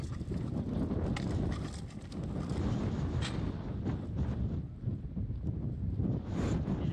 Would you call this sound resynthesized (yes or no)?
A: no